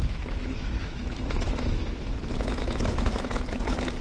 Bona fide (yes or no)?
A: no